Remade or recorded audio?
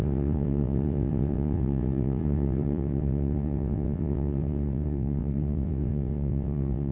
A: remade